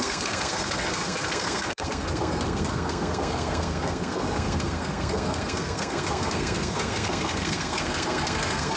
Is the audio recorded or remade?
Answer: remade